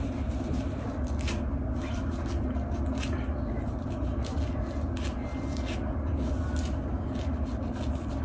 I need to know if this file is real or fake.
real